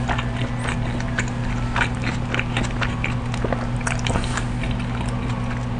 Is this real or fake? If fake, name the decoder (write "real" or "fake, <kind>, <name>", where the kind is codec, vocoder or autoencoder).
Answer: real